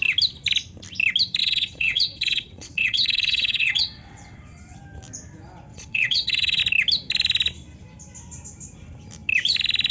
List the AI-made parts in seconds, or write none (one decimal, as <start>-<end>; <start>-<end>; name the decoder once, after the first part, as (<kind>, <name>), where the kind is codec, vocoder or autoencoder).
1.4-4.8 (vocoder, WaveNeXt); 5.7-6.6